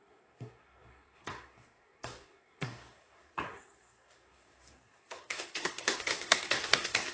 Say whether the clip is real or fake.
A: fake